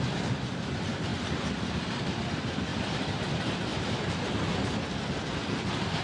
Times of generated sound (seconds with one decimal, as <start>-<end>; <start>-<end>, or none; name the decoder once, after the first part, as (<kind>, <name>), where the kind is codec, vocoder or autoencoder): 1.1-2.2 (vocoder, BigVGAN v2); 2.7-3.3; 3.7-4.3